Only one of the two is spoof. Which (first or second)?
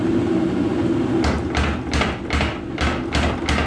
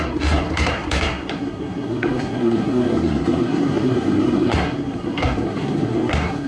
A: second